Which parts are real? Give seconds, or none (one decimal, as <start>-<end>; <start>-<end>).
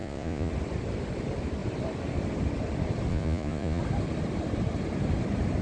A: 0.5-3.1; 3.8-5.6